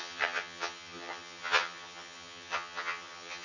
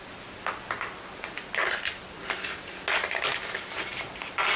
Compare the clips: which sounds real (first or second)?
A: second